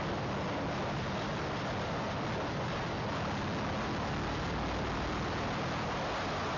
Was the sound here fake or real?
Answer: real